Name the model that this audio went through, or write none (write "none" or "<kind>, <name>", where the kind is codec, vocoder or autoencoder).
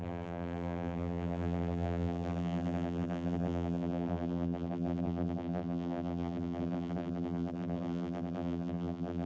vocoder, BigVGAN v2